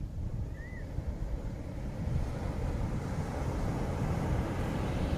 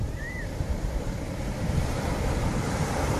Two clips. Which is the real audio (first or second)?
first